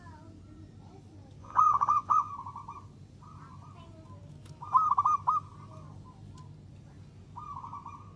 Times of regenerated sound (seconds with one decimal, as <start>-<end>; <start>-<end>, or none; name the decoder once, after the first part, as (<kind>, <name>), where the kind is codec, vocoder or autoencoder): 1.4-2.3 (vocoder, Vocos)